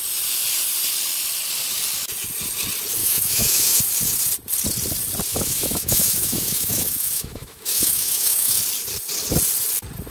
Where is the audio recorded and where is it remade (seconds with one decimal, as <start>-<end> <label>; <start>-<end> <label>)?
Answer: 0.0-3.0 recorded; 3.0-3.8 remade; 3.8-5.3 recorded; 5.3-8.6 remade; 8.6-10.1 recorded